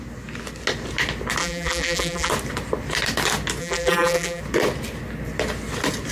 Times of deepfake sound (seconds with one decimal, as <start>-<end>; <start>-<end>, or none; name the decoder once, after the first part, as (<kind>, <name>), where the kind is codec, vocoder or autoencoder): 1.4-2.3 (vocoder, BigVGAN v2); 3.6-4.4